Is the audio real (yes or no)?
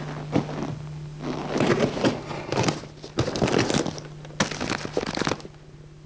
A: yes